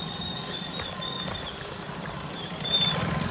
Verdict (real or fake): real